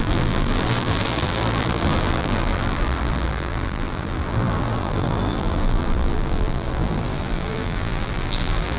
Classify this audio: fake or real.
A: fake